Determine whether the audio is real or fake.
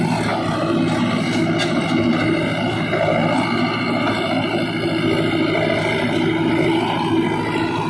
real